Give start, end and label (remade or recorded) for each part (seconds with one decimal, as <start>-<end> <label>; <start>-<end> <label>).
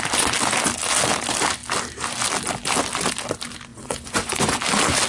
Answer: 0.0-3.7 recorded; 3.7-4.6 remade; 4.6-5.1 recorded